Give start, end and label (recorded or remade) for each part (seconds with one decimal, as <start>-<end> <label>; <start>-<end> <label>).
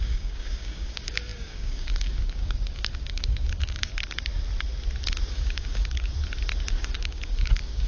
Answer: 0.0-3.9 remade; 3.9-5.3 recorded; 5.3-6.1 remade; 6.1-6.7 recorded; 6.7-7.9 remade